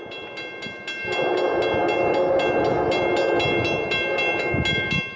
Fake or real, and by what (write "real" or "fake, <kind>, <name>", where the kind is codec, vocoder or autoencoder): real